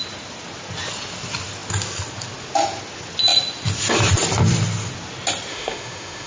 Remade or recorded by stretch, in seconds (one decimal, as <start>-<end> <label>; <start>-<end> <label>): 0.0-5.5 recorded; 5.5-6.3 remade